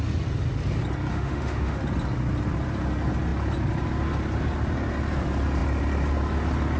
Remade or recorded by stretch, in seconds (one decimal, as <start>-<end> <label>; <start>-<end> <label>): 0.0-1.1 recorded; 1.1-1.8 remade; 1.8-6.8 recorded